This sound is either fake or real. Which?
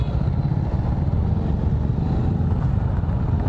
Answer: real